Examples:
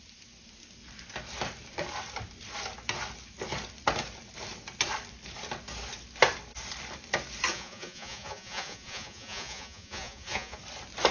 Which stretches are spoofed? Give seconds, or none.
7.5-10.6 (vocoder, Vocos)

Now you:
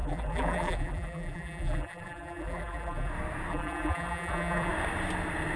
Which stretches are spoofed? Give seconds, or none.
0.0-3.1 (vocoder, BigVGAN v2); 3.5-4.7

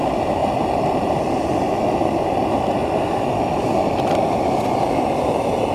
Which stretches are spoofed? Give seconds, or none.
none

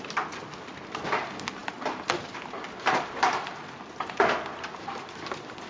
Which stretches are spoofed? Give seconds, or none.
none

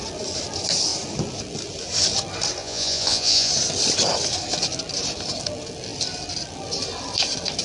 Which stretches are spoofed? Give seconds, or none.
2.6-3.5 (vocoder, Vocos)

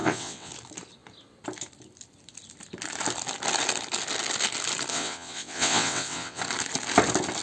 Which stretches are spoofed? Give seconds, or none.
0.0-0.5 (vocoder, WaveNeXt); 4.9-6.4

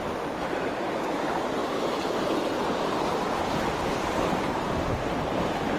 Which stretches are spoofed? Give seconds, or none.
none